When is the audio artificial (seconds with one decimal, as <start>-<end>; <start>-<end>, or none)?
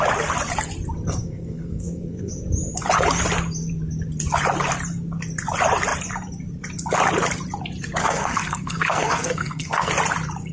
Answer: 1.2-2.3; 8.0-9.9